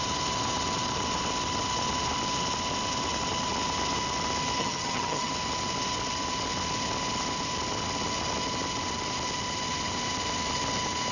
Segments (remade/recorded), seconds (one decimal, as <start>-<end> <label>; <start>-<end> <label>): 0.0-4.6 recorded; 4.6-5.3 remade; 5.3-11.1 recorded